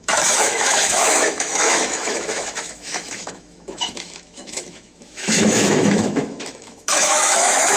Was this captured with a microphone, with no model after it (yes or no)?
no